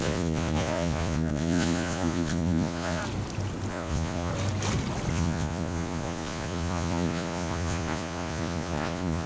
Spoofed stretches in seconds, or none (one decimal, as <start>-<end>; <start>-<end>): 0.0-3.0; 3.7-4.3; 5.1-9.3